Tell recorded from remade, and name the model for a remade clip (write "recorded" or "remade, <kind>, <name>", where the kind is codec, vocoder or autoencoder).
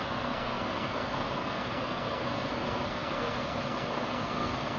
remade, codec, SNAC